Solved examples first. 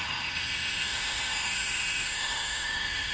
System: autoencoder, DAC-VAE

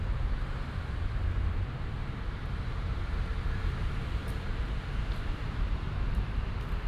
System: vocoder, BigVGAN v2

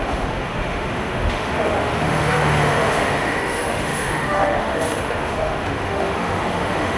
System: autoencoder, DAC-VAE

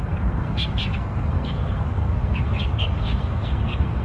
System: codec, SNAC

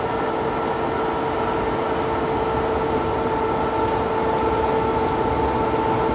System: none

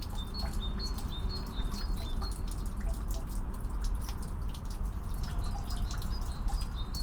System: none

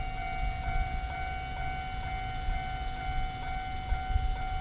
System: none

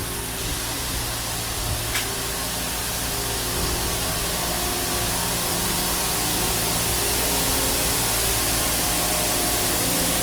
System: none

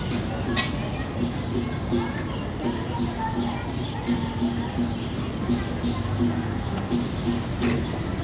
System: none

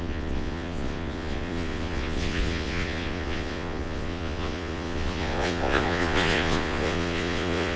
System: vocoder, Vocos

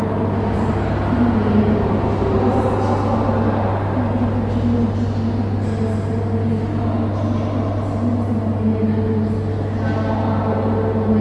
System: none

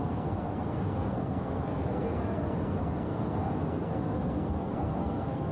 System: codec, SNAC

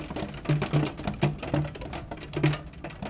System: none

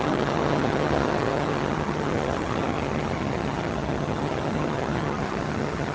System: vocoder, HiFi-GAN